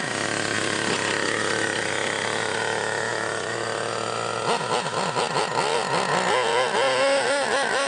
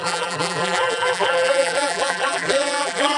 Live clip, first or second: first